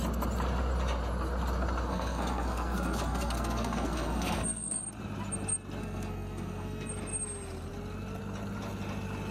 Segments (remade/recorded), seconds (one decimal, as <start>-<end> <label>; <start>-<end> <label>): 0.0-1.9 recorded; 1.9-4.8 remade; 4.8-5.8 recorded; 5.8-6.9 remade; 6.9-9.3 recorded